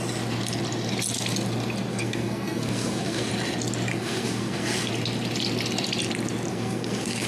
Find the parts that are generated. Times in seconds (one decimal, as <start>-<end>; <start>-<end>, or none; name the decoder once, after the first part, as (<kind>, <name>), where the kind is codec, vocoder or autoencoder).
1.9-3.3 (codec, SNAC); 3.9-4.9; 6.5-7.3

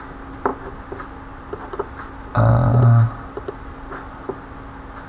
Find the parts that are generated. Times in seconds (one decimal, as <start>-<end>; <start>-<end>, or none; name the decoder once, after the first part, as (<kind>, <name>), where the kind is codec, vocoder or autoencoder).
none

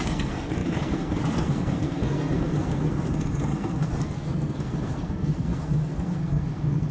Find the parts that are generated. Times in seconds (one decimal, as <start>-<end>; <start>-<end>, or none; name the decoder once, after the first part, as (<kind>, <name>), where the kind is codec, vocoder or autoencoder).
0.0-6.9 (codec, SNAC)